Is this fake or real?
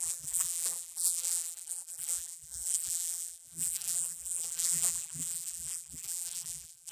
fake